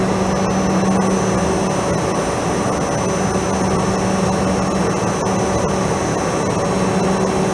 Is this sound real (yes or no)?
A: yes